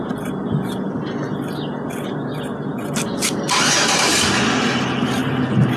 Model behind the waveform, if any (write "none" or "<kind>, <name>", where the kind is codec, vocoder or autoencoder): none